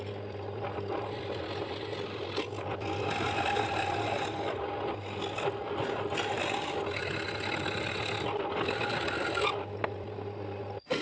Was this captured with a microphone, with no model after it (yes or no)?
yes